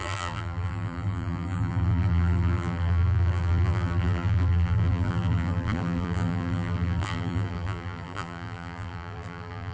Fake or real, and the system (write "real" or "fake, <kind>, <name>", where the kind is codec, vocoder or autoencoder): fake, vocoder, BigVGAN v2